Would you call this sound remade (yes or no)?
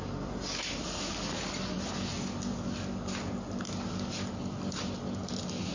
no